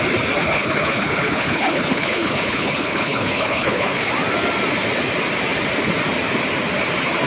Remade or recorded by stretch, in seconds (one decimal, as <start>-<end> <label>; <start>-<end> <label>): 0.0-0.4 recorded; 0.4-4.1 remade; 4.1-7.3 recorded